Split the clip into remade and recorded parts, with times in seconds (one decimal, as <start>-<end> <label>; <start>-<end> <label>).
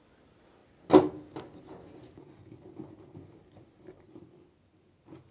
0.0-5.3 recorded